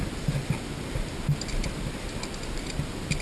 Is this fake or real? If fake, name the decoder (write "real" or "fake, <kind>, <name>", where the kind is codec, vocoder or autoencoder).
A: real